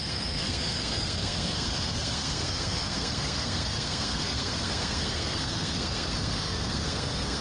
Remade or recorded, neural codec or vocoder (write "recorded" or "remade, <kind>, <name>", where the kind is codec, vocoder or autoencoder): remade, codec, SNAC